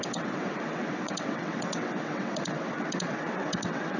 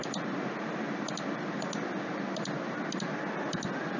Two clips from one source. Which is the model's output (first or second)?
first